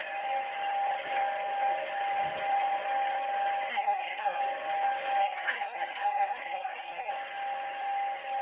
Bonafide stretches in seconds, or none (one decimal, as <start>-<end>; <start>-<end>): 0.0-3.7; 4.4-5.2; 7.1-8.4